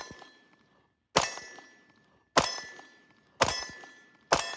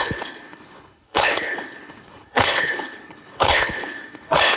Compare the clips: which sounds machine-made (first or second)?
second